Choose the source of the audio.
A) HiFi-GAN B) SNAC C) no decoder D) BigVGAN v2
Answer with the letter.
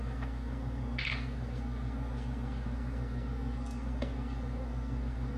B